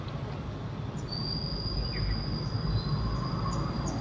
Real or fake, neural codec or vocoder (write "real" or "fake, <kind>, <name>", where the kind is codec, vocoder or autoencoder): real